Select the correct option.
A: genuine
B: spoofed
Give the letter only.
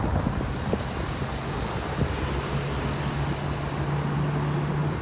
A